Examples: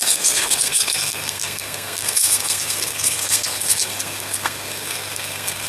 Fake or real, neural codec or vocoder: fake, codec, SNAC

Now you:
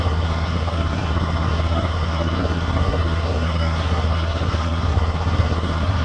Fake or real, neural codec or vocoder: fake, codec, SNAC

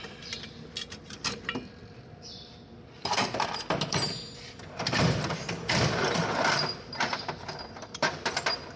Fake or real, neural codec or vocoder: fake, vocoder, BigVGAN v2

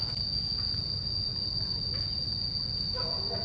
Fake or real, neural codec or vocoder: real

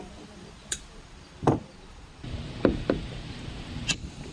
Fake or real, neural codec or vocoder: fake, vocoder, BigVGAN v2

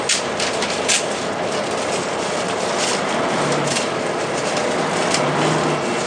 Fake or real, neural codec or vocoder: real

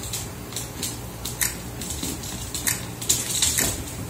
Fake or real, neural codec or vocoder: real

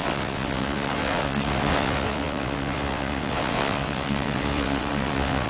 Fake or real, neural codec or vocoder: fake, vocoder, WaveNeXt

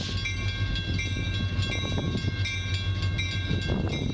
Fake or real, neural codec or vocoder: real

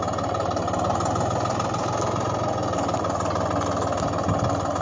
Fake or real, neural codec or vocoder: real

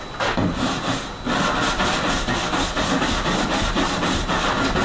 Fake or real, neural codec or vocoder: real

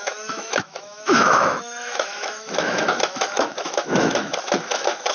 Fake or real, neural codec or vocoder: fake, autoencoder, DAC-VAE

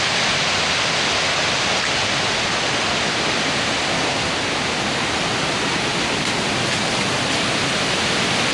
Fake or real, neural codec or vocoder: real